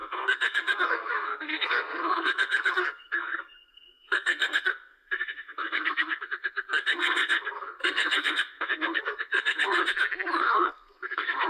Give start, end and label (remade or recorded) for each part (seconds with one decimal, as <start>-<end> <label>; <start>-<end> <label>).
0.0-9.8 remade; 9.8-10.4 recorded; 10.4-11.5 remade